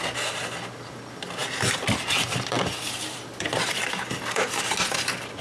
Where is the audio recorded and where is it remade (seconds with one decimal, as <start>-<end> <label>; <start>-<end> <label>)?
0.0-1.4 recorded; 1.4-4.6 remade; 4.6-5.4 recorded